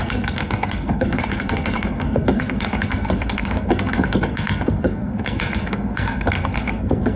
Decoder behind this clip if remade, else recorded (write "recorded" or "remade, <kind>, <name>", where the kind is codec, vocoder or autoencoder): remade, codec, SNAC